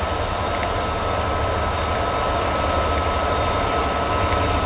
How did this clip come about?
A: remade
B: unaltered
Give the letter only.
B